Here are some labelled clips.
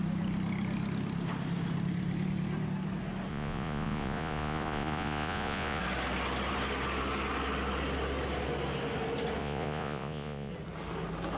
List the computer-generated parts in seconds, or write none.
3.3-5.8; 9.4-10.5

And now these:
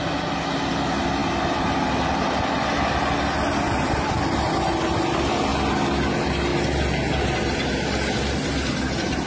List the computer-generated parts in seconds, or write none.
none

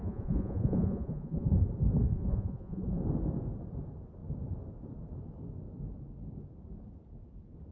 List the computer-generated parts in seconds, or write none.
0.0-1.6; 2.1-3.0

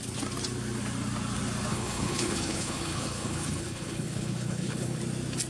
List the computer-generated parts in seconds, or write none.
1.7-5.0

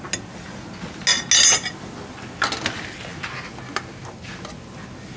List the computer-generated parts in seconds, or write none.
none

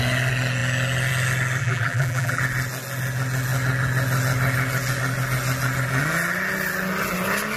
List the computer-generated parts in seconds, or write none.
1.6-2.4

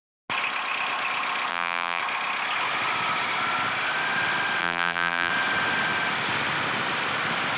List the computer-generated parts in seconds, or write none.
1.5-2.0; 4.6-5.3